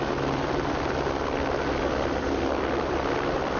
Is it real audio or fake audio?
real